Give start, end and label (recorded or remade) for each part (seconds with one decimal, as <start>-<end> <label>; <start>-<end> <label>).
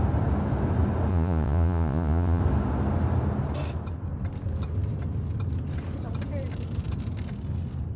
0.0-1.1 recorded; 1.1-2.4 remade; 2.4-8.0 recorded